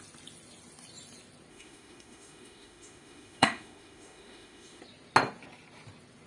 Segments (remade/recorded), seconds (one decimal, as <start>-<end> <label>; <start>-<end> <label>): 0.0-1.5 recorded; 1.5-4.8 remade; 4.8-6.3 recorded